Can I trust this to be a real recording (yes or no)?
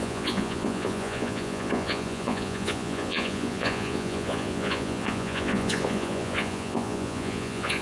no